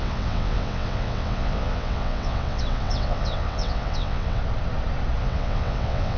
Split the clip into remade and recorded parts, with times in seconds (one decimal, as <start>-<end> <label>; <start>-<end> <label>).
0.0-4.4 remade; 4.4-5.2 recorded; 5.2-6.2 remade